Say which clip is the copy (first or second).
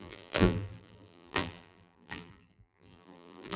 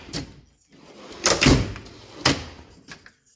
first